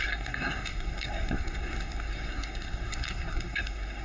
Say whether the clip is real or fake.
fake